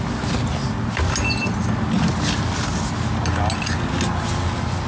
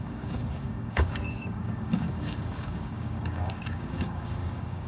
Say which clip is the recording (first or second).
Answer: first